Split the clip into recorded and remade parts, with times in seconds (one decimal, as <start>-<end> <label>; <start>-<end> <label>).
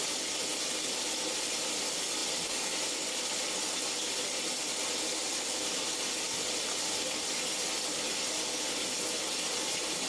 0.0-10.1 recorded